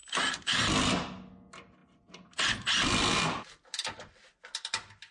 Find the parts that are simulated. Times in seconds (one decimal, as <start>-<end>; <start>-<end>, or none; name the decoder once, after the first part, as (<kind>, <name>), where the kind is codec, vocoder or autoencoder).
none